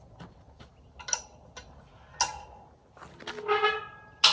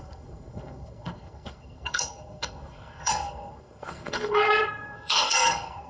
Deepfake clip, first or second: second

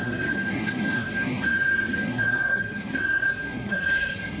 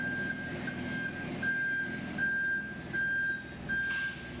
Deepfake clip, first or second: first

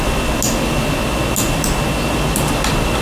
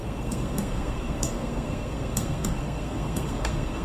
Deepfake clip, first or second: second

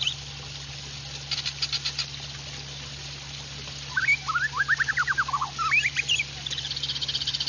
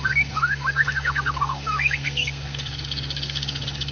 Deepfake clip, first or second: second